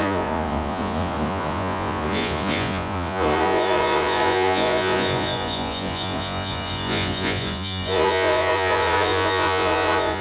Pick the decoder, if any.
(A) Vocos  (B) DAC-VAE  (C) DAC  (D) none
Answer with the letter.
A